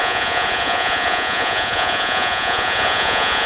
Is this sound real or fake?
fake